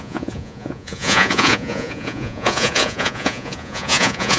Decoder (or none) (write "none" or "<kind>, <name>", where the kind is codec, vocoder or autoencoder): vocoder, Vocos